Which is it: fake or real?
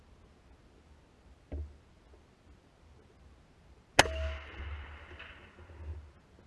real